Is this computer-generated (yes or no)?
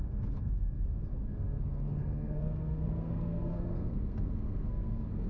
yes